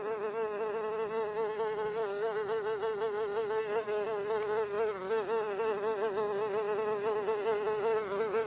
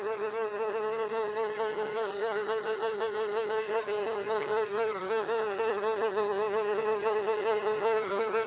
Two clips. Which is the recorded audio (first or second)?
first